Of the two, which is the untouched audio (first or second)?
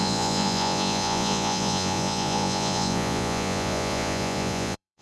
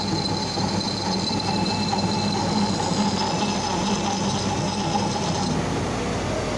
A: second